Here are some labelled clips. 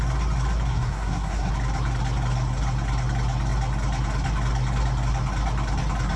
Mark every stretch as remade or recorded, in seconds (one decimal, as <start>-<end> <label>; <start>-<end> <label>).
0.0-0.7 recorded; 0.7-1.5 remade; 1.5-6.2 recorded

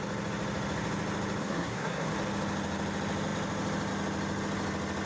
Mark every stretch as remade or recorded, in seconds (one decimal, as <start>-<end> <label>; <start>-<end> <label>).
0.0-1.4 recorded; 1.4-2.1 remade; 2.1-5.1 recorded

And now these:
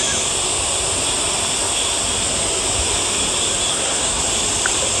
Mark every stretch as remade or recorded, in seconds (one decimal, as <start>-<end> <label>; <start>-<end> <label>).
0.0-3.7 recorded; 3.7-4.2 remade; 4.2-5.0 recorded